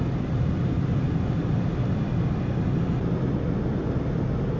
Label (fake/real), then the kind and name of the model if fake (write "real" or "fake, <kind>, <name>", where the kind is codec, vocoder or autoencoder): real